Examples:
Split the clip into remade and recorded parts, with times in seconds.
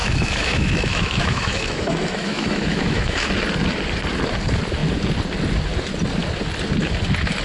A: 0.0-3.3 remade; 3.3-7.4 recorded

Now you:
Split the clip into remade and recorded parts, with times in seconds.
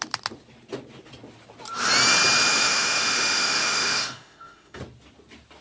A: 0.0-2.5 recorded; 2.5-4.8 remade; 4.8-5.6 recorded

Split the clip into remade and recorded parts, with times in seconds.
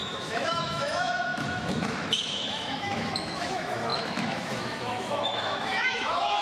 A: 0.0-6.4 remade